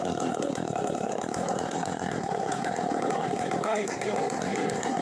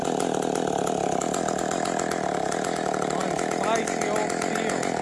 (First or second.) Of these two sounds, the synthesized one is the first